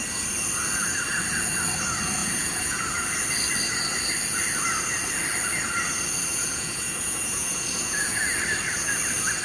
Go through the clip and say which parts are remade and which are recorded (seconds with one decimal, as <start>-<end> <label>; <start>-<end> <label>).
0.0-2.2 recorded; 2.2-2.8 remade; 2.8-6.3 recorded; 6.3-8.2 remade; 8.2-9.4 recorded